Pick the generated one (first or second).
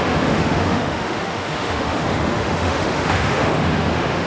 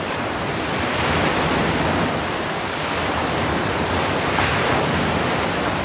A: first